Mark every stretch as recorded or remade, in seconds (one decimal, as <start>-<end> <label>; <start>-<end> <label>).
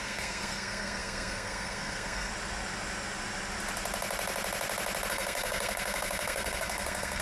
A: 0.0-2.3 remade; 2.3-5.1 recorded; 5.1-7.2 remade